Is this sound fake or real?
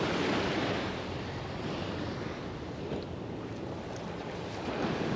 real